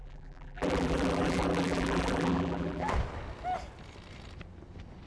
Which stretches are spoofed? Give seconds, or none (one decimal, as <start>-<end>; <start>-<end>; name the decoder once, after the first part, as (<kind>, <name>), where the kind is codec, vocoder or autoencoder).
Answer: 0.0-2.9 (vocoder, BigVGAN v2)